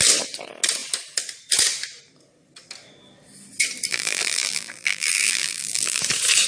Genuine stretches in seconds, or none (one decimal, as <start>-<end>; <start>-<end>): 0.0-3.9; 6.0-6.5